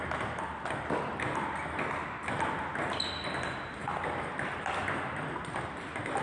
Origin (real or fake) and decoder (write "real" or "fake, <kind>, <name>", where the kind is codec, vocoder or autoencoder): real